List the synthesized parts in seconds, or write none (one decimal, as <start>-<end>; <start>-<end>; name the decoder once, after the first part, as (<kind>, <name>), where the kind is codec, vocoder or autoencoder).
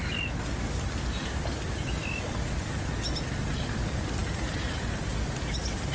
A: none